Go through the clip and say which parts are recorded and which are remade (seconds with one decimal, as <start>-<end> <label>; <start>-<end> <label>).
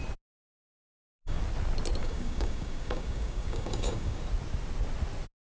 0.0-0.7 recorded; 0.7-1.4 remade; 1.4-2.0 recorded; 2.0-4.2 remade; 4.2-5.6 recorded